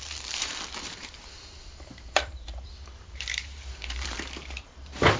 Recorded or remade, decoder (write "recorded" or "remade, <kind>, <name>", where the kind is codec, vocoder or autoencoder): remade, vocoder, BigVGAN v2